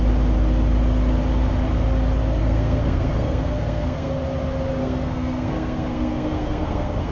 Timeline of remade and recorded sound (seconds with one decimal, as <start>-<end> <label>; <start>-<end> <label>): 0.0-2.4 recorded; 2.4-4.1 remade; 4.1-4.8 recorded; 4.8-7.1 remade